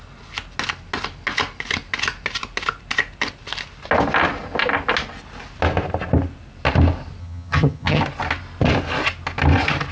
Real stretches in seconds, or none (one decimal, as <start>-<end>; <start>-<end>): 0.0-7.2; 8.0-9.9